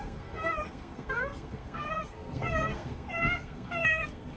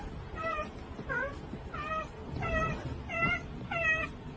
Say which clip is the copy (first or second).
first